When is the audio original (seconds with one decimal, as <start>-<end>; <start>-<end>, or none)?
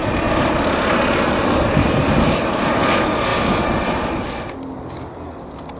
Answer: 0.0-1.8; 2.4-5.8